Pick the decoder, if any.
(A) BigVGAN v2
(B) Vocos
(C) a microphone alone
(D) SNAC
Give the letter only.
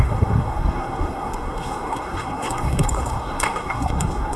D